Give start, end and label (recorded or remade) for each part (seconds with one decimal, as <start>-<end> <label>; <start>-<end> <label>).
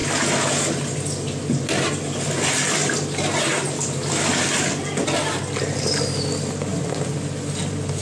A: 0.0-8.0 recorded